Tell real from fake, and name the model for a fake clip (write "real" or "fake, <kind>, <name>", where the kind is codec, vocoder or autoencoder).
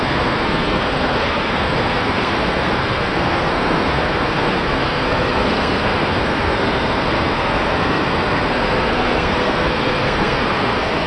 fake, codec, SNAC